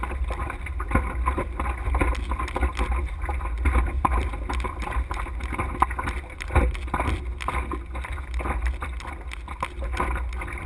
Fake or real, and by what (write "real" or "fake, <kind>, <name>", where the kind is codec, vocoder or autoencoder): real